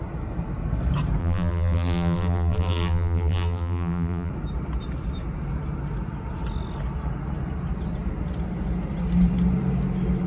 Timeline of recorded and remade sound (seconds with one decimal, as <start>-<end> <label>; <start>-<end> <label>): 0.0-1.2 recorded; 1.2-4.3 remade; 4.3-10.3 recorded